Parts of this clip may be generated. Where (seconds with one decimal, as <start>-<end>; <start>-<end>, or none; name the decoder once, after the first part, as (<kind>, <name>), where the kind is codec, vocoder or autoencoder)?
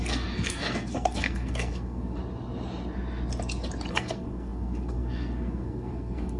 0.0-2.2 (codec, SNAC); 3.9-6.4